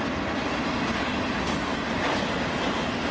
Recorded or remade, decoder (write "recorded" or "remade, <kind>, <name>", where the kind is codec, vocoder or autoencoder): recorded